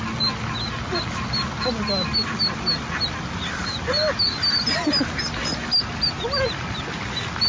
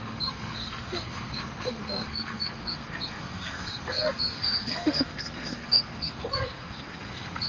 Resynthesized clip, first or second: second